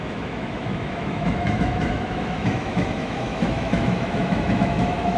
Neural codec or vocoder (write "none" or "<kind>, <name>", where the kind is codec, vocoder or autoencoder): autoencoder, DAC-VAE